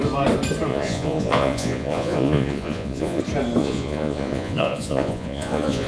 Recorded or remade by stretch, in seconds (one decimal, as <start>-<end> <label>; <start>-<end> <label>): 0.0-0.7 recorded; 0.7-3.2 remade; 3.2-3.6 recorded; 3.6-5.9 remade